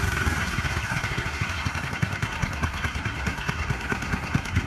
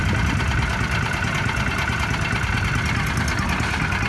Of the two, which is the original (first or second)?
second